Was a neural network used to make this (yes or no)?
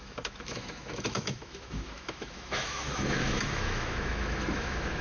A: yes